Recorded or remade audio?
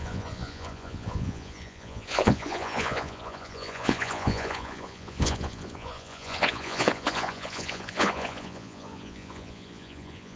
remade